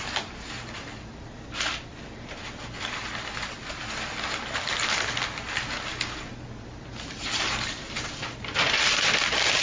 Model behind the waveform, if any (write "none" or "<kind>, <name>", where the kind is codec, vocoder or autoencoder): none